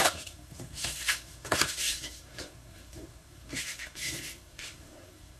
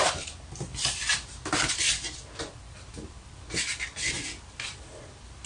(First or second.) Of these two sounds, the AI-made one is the first